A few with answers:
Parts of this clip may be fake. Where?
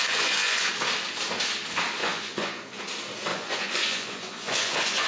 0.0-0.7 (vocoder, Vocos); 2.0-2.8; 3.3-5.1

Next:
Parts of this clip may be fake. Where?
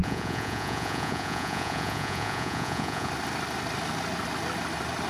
0.0-3.1 (vocoder, Vocos)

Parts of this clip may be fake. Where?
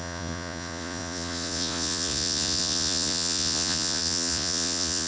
0.0-5.1 (vocoder, Vocos)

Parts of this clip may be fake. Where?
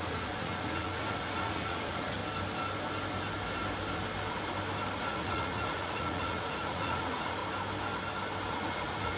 0.0-2.2 (vocoder, Vocos); 5.0-7.4; 8.5-9.2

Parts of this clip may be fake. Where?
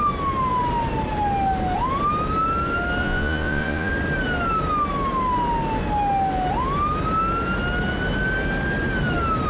3.0-3.9 (vocoder, Vocos)